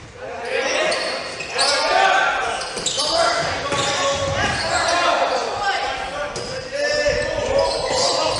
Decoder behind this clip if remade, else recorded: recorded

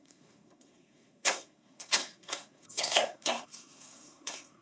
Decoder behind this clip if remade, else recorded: remade, codec, SNAC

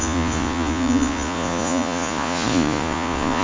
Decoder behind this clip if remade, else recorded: remade, vocoder, Vocos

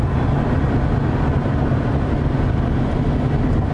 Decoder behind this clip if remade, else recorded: recorded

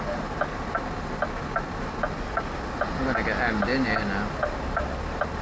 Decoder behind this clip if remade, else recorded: recorded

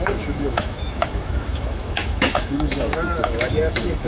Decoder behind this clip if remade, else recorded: remade, autoencoder, DAC-VAE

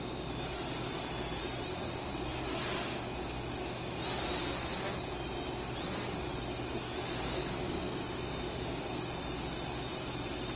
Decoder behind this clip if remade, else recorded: recorded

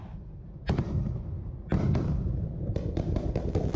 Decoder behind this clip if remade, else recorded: recorded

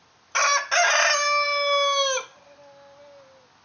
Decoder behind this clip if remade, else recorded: recorded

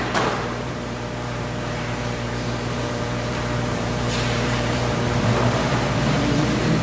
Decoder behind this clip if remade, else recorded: remade, vocoder, BigVGAN v2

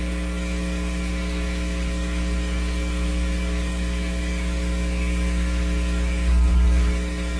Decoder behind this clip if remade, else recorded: remade, codec, DAC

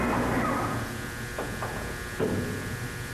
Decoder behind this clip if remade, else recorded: recorded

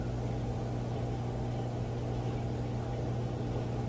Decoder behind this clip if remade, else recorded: recorded